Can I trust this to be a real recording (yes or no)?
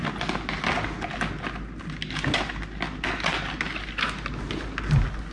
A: yes